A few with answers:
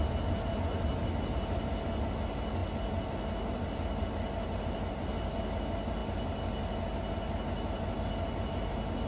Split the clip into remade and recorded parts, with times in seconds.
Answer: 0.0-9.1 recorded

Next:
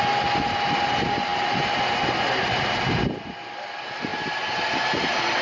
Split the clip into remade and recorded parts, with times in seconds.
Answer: 0.0-5.4 recorded

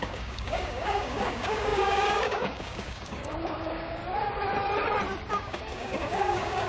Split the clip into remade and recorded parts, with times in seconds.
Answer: 0.0-4.0 remade; 4.0-5.3 recorded; 5.3-6.7 remade